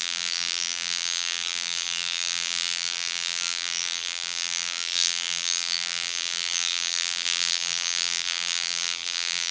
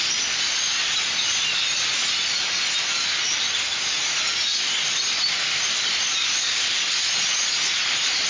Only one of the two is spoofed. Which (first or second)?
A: first